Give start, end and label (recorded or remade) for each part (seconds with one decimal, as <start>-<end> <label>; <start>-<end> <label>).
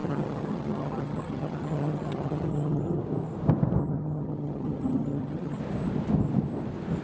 0.0-3.0 remade; 3.0-3.8 recorded; 3.8-5.6 remade; 5.6-7.0 recorded